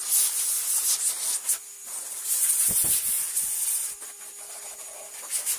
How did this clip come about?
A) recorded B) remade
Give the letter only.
A